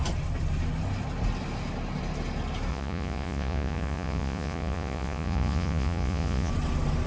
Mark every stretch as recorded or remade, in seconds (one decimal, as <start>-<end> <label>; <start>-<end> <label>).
0.0-2.7 recorded; 2.7-6.5 remade; 6.5-7.1 recorded